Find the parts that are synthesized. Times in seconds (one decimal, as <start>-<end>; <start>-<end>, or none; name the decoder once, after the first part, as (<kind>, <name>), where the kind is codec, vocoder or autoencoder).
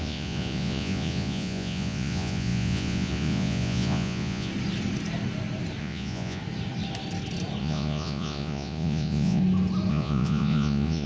0.0-4.5 (vocoder, Vocos); 5.8-6.4; 7.6-9.4; 9.9-11.1